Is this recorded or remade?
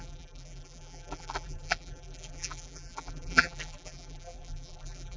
remade